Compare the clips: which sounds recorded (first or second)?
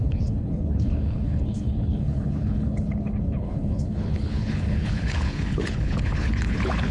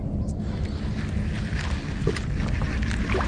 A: second